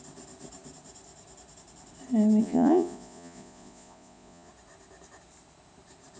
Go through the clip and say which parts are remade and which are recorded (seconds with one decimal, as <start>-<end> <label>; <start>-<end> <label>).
0.0-2.4 recorded; 2.4-4.5 remade; 4.5-6.2 recorded